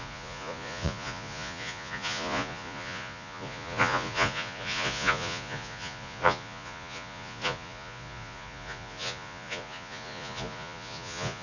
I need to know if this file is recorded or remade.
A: remade